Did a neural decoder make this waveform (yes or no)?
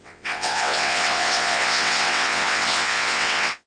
yes